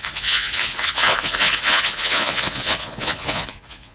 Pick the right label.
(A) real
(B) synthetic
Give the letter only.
B